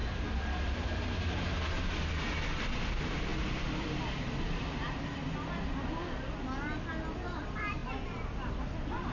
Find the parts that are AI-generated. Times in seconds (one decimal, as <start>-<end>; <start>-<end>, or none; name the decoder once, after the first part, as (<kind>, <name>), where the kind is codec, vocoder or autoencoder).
none